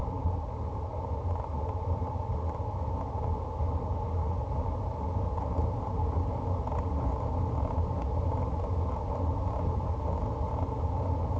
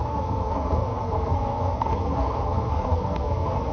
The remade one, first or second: second